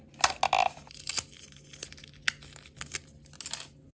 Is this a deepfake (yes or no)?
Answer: no